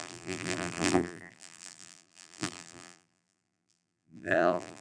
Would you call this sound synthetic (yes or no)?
yes